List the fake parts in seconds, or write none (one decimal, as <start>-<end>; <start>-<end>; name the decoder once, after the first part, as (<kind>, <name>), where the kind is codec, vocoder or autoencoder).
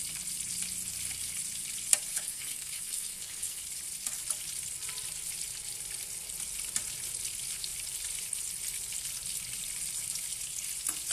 2.1-3.6 (codec, SNAC)